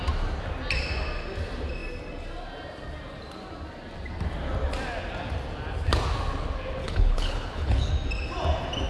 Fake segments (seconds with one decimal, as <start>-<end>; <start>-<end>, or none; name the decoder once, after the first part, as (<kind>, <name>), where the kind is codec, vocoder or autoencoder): 6.8-7.9 (codec, HILCodec)